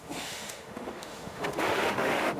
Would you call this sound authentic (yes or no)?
no